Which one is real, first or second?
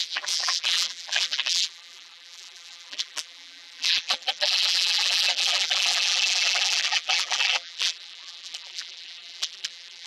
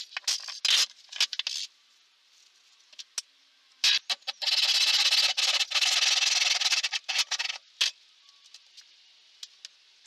second